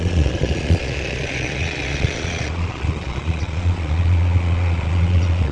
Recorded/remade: remade